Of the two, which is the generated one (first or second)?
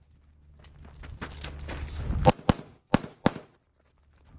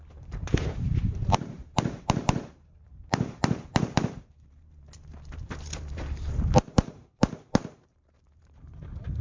second